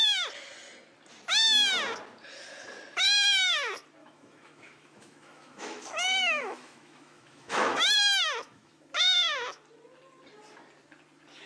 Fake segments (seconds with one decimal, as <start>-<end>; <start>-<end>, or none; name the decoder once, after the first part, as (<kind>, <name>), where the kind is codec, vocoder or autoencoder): 4.0-9.0 (autoencoder, DAC-VAE)